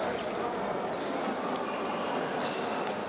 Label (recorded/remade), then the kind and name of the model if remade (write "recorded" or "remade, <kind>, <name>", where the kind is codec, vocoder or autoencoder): recorded